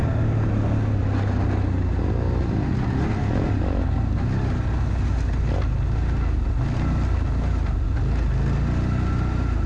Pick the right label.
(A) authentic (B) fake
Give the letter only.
A